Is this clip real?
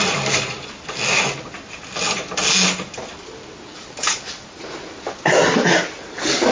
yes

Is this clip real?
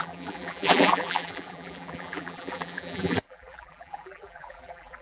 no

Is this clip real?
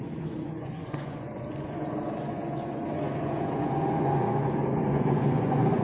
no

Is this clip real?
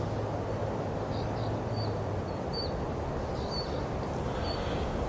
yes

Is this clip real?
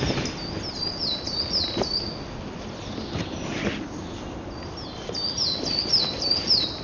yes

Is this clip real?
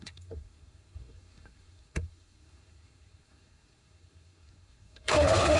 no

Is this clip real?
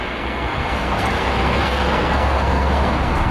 no